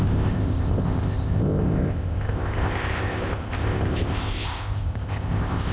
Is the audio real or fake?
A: fake